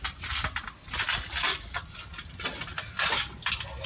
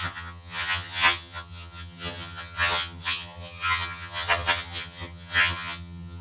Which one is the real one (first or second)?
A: first